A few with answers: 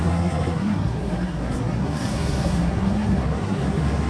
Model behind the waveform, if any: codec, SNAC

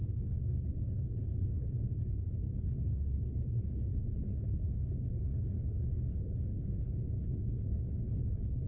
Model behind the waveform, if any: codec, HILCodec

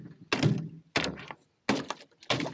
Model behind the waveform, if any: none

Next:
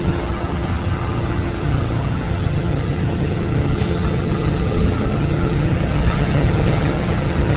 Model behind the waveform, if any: vocoder, HiFi-GAN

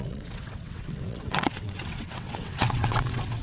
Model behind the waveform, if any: vocoder, WaveNeXt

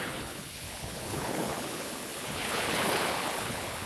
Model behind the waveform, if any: codec, HILCodec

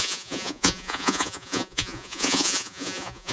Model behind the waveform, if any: vocoder, Vocos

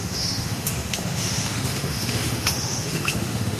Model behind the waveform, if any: autoencoder, DAC-VAE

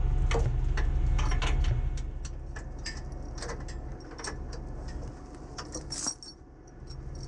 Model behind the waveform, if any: none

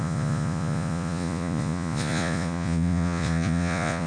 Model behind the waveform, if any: vocoder, Vocos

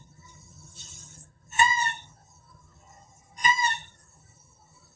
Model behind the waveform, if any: vocoder, HiFi-GAN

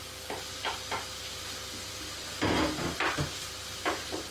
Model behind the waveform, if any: none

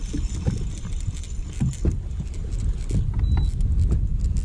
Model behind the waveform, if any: none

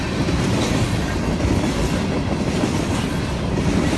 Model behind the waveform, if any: none